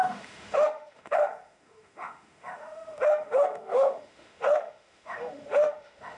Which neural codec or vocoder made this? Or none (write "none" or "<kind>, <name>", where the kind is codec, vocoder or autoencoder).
autoencoder, DAC-VAE